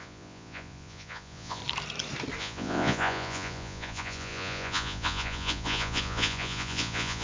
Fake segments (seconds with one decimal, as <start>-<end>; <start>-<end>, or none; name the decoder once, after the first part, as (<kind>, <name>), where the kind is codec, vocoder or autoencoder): 0.0-1.6 (vocoder, Vocos); 2.4-7.2